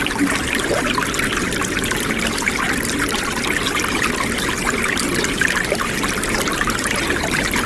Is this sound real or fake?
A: real